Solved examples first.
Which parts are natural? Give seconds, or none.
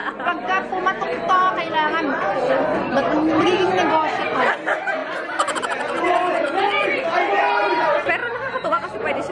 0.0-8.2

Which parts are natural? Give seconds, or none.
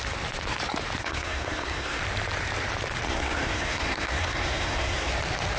0.0-1.0; 2.0-3.1; 5.1-5.6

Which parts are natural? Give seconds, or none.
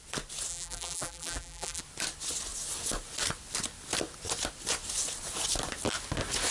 0.0-0.5; 1.8-6.5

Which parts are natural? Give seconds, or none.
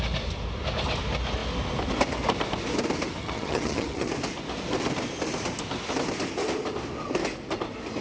0.0-3.2; 4.1-8.0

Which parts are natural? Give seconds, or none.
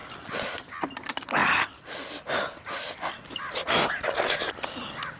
0.0-5.2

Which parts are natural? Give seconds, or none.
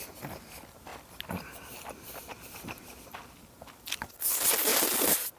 0.0-5.4